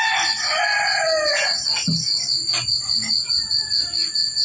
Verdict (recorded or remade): recorded